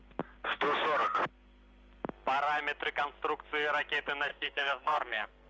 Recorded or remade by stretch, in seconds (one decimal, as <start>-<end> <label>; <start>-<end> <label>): 0.0-4.3 recorded; 4.3-5.5 remade